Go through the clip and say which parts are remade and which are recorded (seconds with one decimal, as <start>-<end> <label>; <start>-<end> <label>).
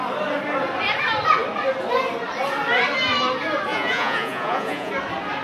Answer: 0.0-3.7 recorded; 3.7-4.9 remade; 4.9-5.4 recorded